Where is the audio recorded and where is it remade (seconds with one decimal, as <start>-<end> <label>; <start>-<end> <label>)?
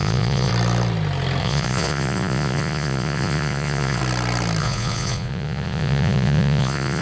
0.0-0.5 remade; 0.5-1.4 recorded; 1.4-4.0 remade; 4.0-4.6 recorded; 4.6-7.0 remade